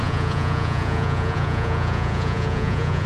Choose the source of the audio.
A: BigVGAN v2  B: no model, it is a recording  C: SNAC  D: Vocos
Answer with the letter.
D